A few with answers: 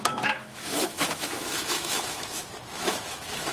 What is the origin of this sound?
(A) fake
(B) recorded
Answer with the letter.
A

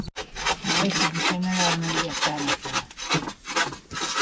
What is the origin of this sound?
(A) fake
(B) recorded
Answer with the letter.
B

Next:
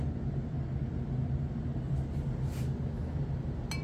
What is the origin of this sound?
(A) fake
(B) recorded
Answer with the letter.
B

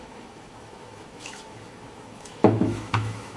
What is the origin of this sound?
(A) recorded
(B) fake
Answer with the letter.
B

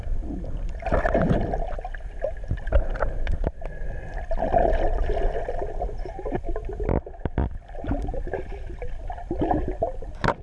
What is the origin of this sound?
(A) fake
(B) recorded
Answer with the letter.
B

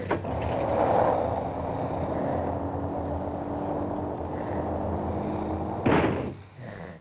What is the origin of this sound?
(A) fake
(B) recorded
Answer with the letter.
B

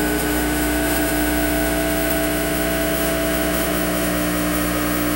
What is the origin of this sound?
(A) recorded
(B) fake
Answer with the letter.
B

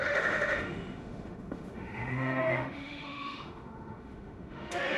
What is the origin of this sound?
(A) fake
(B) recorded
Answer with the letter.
A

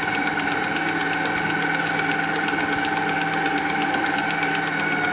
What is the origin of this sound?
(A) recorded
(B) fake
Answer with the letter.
A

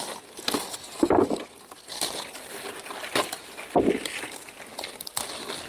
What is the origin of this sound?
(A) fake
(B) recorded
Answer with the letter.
B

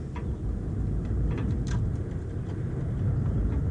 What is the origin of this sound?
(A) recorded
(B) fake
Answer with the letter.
A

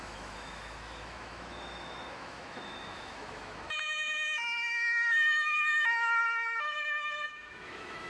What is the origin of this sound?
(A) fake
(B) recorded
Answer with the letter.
A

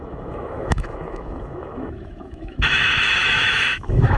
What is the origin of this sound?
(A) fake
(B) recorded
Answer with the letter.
A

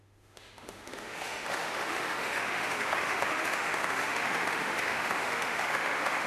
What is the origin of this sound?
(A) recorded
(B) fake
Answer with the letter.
B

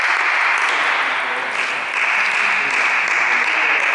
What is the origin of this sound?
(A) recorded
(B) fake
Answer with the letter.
A